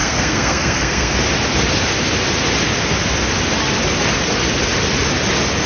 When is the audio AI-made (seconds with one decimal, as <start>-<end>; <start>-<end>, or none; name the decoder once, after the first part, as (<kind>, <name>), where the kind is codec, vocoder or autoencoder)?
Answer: 0.0-1.1 (codec, SNAC)